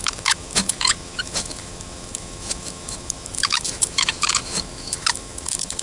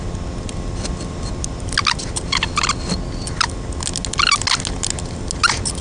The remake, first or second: first